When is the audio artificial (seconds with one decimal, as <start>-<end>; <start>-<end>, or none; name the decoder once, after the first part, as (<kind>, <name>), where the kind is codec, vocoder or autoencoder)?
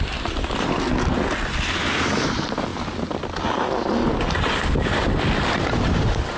none